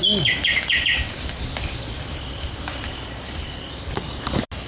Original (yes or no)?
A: yes